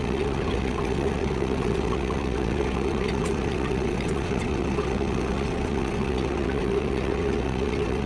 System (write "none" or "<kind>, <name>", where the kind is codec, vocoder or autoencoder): vocoder, WaveNeXt